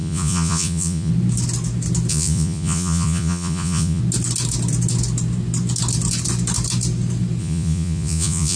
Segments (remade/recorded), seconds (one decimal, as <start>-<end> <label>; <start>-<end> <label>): 0.0-1.1 remade; 1.1-2.1 recorded; 2.1-4.0 remade; 4.0-7.4 recorded; 7.4-8.6 remade